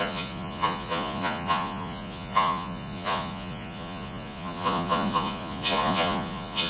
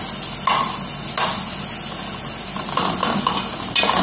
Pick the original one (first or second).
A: second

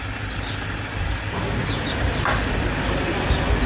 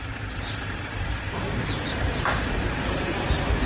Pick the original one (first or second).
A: first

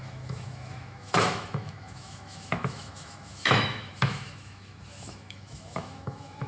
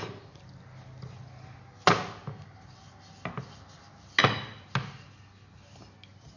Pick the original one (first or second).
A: second